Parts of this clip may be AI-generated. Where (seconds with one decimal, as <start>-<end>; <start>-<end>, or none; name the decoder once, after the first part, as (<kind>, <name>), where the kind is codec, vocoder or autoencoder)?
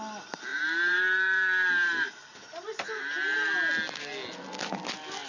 0.5-3.7 (vocoder, BigVGAN v2)